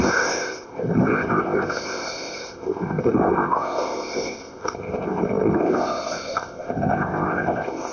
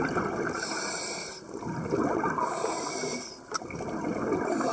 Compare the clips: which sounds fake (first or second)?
first